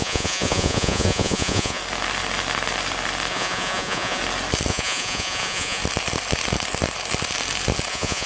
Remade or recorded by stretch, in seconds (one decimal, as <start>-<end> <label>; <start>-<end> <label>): 0.0-1.8 remade; 1.8-3.3 recorded; 3.3-4.2 remade; 4.2-4.7 recorded; 4.7-5.8 remade; 5.8-7.9 recorded; 7.9-8.3 remade